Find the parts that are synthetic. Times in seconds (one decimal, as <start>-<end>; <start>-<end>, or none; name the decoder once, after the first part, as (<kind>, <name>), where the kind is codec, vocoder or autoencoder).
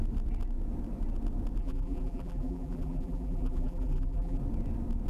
1.6-4.4 (vocoder, BigVGAN v2)